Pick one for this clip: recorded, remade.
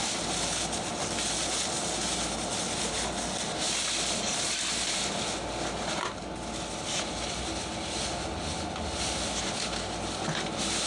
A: recorded